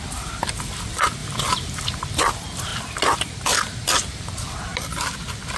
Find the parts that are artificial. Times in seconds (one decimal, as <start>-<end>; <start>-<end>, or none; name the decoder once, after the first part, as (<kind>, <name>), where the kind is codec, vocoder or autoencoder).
1.2-2.2 (vocoder, BigVGAN v2); 2.7-3.3; 4.7-5.6